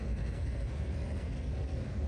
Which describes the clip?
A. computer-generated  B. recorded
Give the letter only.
A